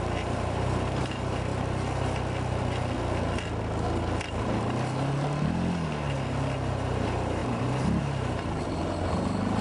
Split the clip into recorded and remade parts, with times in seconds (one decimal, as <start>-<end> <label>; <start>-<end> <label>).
0.0-1.5 remade; 1.5-6.7 recorded; 6.7-9.6 remade